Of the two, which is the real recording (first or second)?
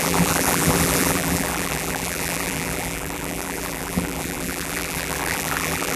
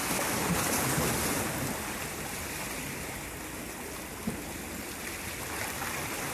second